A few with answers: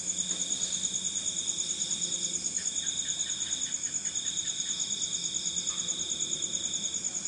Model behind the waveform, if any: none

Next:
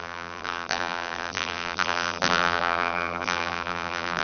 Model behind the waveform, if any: vocoder, BigVGAN v2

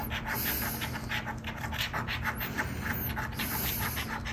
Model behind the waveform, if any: none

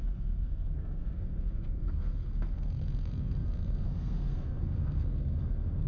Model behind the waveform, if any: codec, SNAC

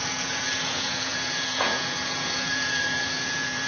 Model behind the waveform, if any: vocoder, Vocos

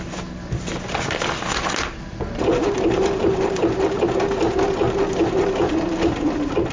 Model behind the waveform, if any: vocoder, BigVGAN v2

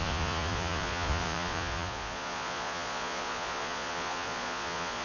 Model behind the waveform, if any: vocoder, Vocos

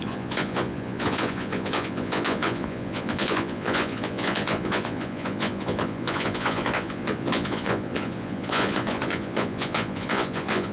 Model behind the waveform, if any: vocoder, Vocos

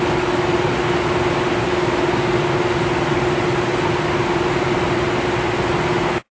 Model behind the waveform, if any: none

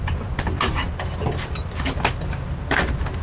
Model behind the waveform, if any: none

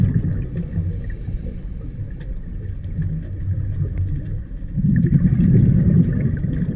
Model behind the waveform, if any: none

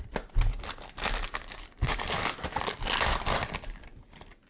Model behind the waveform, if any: none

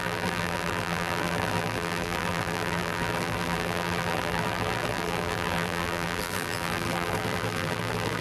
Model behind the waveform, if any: vocoder, BigVGAN v2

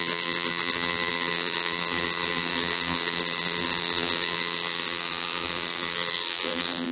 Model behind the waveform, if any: vocoder, BigVGAN v2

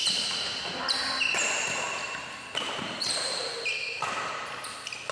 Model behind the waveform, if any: none